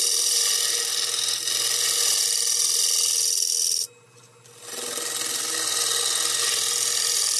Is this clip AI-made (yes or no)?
no